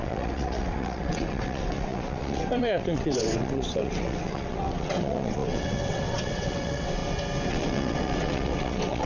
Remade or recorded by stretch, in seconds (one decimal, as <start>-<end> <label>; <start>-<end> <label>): 0.0-7.0 remade; 7.0-7.5 recorded; 7.5-9.1 remade